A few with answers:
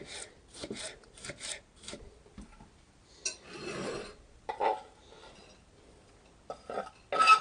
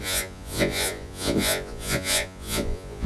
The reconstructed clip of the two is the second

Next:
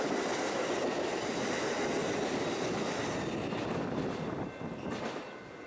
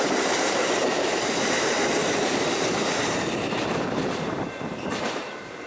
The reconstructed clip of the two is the second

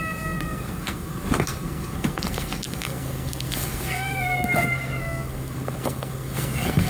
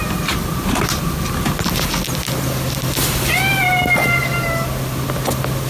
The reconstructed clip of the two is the first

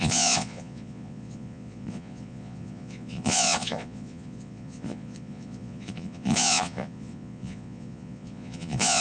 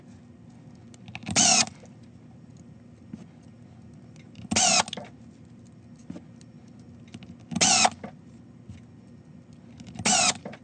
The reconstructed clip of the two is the first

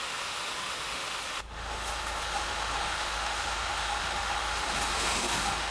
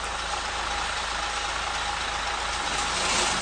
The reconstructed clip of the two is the first